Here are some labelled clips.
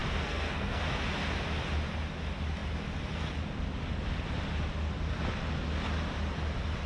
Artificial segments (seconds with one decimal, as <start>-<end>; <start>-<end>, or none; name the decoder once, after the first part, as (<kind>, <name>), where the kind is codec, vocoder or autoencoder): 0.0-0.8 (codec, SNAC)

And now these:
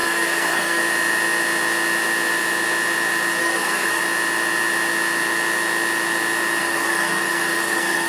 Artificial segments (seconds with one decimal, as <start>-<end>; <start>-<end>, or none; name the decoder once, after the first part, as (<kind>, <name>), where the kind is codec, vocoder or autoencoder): 0.0-0.8 (codec, SNAC); 3.4-4.0; 6.6-8.1

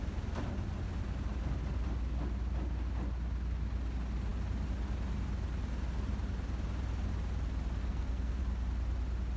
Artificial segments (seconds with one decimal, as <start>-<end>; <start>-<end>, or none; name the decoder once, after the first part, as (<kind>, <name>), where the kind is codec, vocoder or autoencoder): 7.8-8.4 (codec, SNAC)

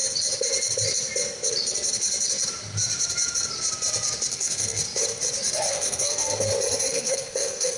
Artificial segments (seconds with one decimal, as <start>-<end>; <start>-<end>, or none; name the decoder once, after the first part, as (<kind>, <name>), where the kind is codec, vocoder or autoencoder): 4.3-4.8 (codec, SNAC); 5.7-6.5; 6.9-7.8